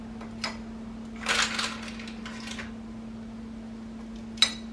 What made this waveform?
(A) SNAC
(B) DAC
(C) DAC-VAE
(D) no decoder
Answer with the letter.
D